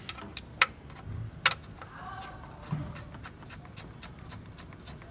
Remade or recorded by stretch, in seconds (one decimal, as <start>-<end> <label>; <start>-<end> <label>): 0.0-5.1 recorded